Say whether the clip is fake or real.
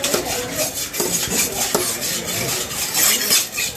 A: real